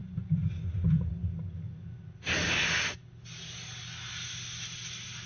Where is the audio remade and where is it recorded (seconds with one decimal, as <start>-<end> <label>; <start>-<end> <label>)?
0.0-5.3 recorded